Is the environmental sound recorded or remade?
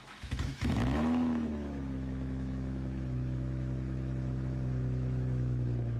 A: remade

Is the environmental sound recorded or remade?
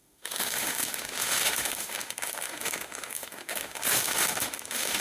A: remade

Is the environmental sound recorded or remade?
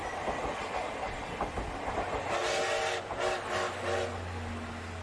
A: recorded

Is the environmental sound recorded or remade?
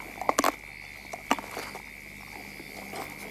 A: recorded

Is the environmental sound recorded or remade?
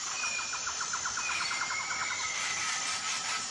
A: recorded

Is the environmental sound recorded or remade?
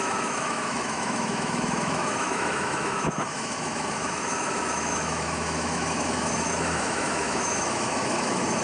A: remade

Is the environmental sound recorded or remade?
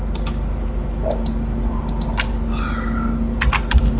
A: recorded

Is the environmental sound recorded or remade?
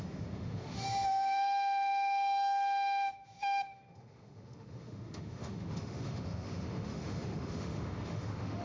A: remade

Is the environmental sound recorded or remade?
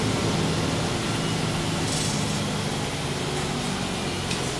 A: recorded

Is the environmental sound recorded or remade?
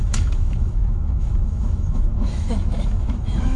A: remade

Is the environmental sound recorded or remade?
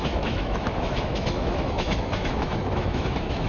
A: remade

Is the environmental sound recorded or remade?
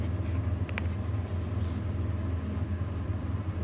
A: recorded